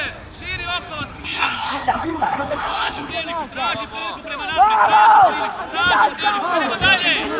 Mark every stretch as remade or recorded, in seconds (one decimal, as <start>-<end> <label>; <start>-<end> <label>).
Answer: 0.0-1.1 recorded; 1.1-3.1 remade; 3.1-7.4 recorded